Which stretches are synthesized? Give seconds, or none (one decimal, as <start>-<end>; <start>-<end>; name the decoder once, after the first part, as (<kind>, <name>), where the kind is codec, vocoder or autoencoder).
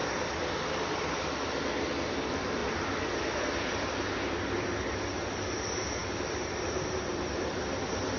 0.0-1.1 (vocoder, BigVGAN v2); 6.0-7.6